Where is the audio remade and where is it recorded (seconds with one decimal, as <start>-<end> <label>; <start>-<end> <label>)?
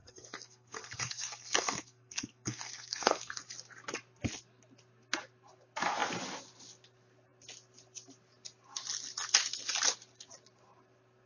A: 0.0-3.4 remade; 3.4-11.3 recorded